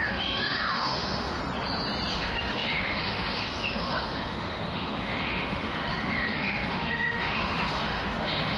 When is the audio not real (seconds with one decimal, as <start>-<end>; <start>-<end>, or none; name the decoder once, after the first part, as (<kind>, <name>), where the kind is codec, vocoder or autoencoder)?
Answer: 0.0-1.4 (autoencoder, DAC-VAE); 2.1-8.6